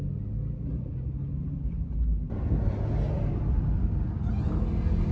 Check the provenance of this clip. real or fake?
real